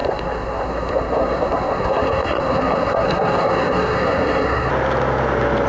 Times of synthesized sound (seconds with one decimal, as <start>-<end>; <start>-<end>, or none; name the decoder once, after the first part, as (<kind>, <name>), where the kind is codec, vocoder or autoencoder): 0.0-4.7 (codec, SNAC)